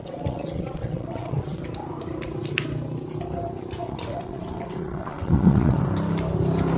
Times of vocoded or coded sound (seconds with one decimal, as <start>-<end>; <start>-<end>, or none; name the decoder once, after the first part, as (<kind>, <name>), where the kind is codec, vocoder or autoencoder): 0.0-1.6 (vocoder, WaveNeXt); 3.8-5.8